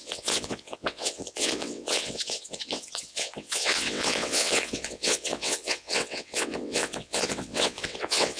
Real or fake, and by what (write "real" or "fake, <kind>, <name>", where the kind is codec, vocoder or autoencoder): fake, vocoder, WaveNeXt